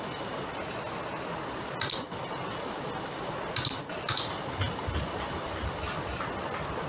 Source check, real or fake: real